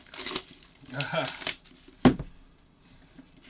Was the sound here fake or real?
real